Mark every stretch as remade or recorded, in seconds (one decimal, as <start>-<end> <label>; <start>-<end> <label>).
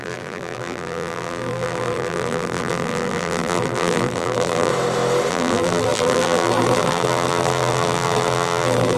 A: 0.0-4.7 remade; 4.7-5.3 recorded; 5.3-9.0 remade